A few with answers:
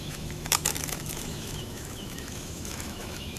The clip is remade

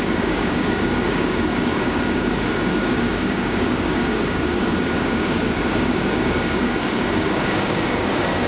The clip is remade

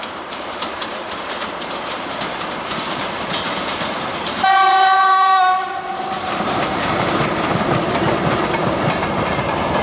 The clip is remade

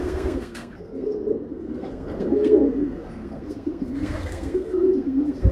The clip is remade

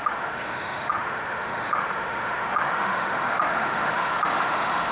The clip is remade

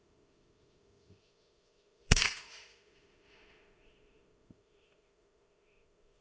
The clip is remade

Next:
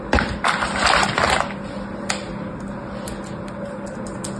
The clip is recorded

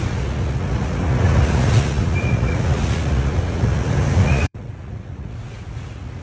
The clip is remade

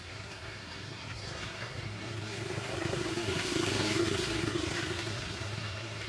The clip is remade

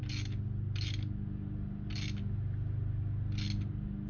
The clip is recorded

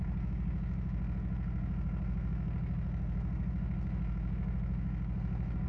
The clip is remade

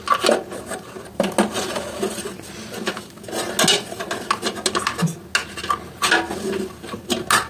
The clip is recorded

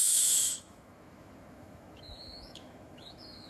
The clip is remade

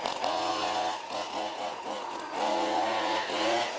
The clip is remade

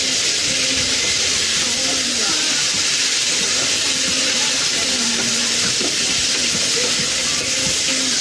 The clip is recorded